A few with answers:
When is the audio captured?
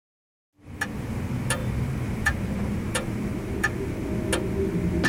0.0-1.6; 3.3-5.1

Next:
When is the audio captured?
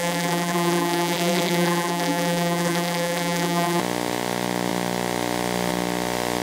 3.8-6.4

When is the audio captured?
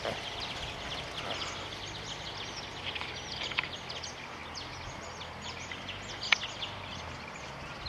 0.0-7.9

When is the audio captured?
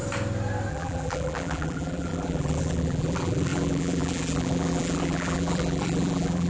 0.0-0.7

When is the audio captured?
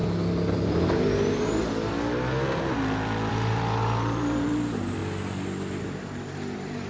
0.0-3.3; 5.0-5.8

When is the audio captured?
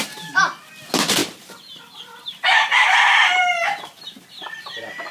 0.0-1.2; 4.3-5.1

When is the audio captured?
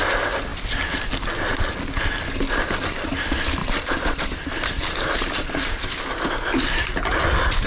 0.0-3.6; 6.0-7.7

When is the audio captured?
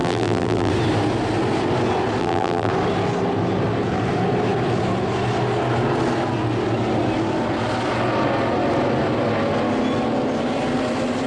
0.7-2.2; 2.7-11.3